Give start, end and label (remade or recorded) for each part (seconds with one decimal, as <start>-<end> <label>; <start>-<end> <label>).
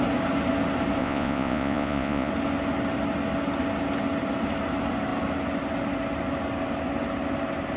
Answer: 0.0-1.0 recorded; 1.0-2.3 remade; 2.3-7.8 recorded